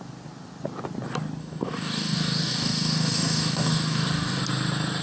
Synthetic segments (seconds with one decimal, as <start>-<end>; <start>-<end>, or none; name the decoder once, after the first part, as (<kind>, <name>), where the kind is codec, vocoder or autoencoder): 1.4-4.4 (codec, DAC)